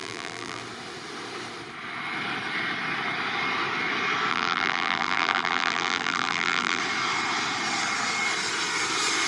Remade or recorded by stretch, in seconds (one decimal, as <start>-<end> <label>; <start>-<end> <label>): 0.0-0.6 remade; 0.6-4.3 recorded; 4.3-6.8 remade; 6.8-9.3 recorded